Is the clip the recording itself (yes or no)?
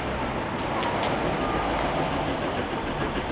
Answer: yes